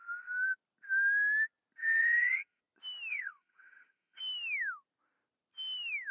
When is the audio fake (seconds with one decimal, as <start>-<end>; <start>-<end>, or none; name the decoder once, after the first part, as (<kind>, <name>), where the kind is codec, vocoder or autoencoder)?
1.8-2.6 (vocoder, HiFi-GAN); 3.1-4.2